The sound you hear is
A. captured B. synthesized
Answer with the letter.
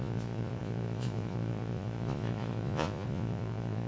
B